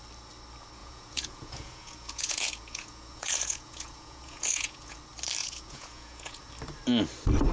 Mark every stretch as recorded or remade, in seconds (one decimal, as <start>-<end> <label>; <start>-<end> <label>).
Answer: 0.0-0.8 recorded; 0.8-5.0 remade; 5.0-5.4 recorded; 5.4-6.5 remade; 6.5-7.5 recorded